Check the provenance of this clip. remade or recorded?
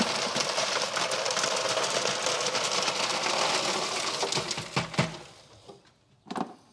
recorded